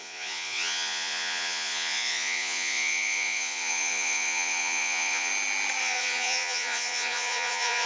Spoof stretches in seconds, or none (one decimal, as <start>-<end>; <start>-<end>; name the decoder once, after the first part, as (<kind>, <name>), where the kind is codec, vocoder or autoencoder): 0.0-5.3 (vocoder, Vocos); 5.8-7.9